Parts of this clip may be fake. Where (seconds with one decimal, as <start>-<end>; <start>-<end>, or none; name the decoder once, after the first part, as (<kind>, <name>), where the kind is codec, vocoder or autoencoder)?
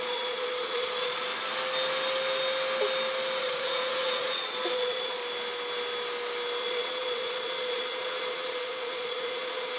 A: 0.0-1.3 (vocoder, Vocos); 3.4-5.2; 6.6-9.8